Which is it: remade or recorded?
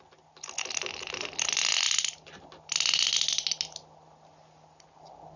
recorded